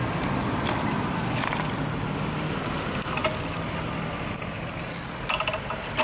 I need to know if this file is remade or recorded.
recorded